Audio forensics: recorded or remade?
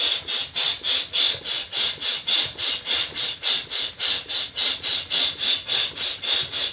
recorded